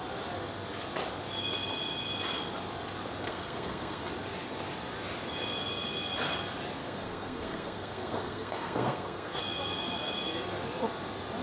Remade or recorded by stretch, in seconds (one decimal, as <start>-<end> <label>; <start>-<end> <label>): 0.0-3.3 recorded; 3.3-4.1 remade; 4.1-6.8 recorded; 6.8-9.4 remade; 9.4-11.4 recorded